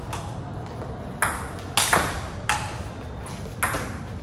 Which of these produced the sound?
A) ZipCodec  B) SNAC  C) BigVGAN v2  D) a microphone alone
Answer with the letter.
D